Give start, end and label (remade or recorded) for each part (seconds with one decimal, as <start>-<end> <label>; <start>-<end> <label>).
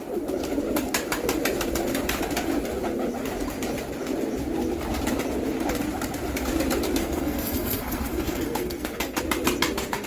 0.0-7.0 recorded; 7.0-9.2 remade; 9.2-10.1 recorded